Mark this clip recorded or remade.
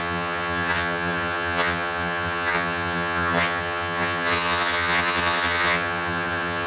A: remade